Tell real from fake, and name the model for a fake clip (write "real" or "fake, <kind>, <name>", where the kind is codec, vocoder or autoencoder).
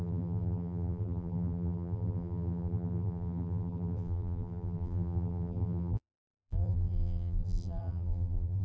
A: fake, vocoder, BigVGAN v2